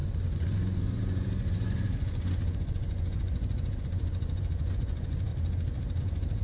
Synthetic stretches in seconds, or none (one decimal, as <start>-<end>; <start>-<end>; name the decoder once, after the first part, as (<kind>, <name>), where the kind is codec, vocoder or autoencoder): 0.0-5.3 (vocoder, Vocos); 6.0-6.4